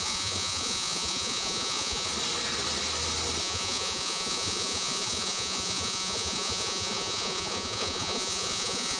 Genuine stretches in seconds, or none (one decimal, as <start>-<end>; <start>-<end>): 2.1-3.4